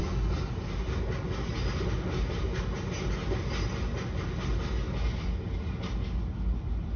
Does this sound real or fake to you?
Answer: real